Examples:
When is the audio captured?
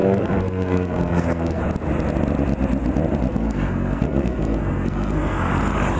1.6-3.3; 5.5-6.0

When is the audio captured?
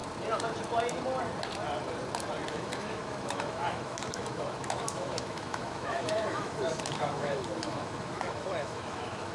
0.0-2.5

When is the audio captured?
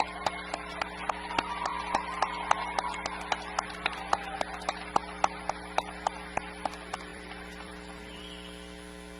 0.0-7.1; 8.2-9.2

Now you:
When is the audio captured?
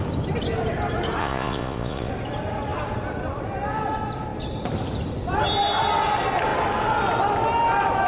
0.0-1.2; 2.1-8.1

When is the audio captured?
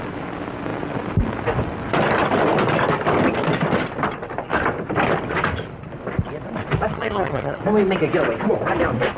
0.0-6.9; 7.6-9.2